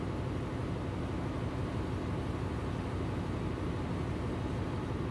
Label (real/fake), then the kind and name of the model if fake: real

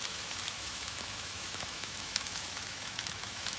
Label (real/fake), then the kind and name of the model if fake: fake, autoencoder, DAC-VAE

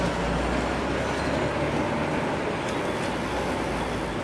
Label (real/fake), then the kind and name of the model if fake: real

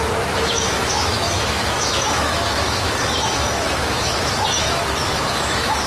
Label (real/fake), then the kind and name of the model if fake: fake, autoencoder, DAC-VAE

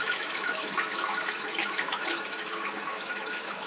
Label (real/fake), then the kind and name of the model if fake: fake, autoencoder, DAC-VAE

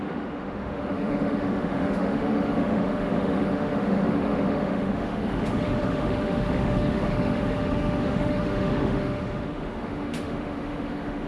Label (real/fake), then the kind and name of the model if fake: fake, autoencoder, DAC-VAE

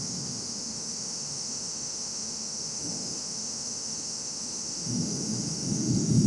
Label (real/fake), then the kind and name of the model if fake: fake, autoencoder, DAC-VAE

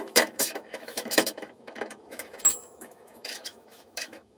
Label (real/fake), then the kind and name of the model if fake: fake, autoencoder, DAC-VAE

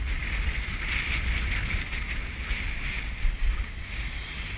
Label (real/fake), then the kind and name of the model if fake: real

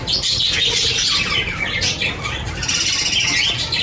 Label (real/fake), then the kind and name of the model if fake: real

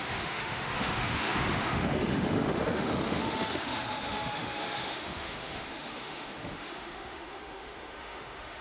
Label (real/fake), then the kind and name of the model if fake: fake, autoencoder, DAC-VAE